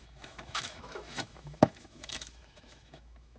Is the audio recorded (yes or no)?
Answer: no